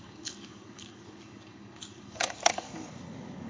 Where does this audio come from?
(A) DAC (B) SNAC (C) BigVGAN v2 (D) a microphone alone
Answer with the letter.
A